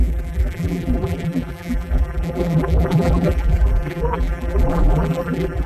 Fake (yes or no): yes